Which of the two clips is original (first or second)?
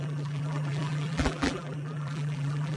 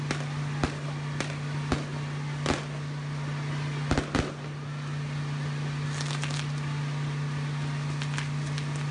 second